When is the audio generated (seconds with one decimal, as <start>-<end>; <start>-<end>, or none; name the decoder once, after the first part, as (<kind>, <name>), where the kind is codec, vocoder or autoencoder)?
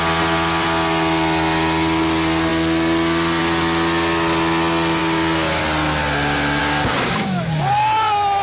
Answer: 5.0-5.6 (codec, DAC); 6.6-7.7